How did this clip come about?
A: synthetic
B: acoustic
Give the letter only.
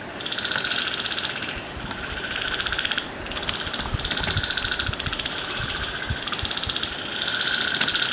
B